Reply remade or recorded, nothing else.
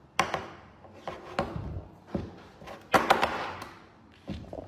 recorded